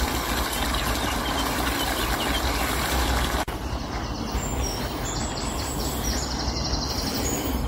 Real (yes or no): yes